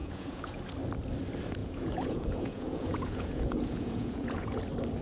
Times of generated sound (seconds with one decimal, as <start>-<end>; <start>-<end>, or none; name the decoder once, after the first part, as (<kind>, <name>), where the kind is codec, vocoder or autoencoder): 0.0-0.6 (vocoder, Vocos); 1.6-4.6